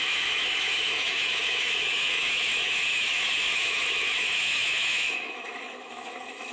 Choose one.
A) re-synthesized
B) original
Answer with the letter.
A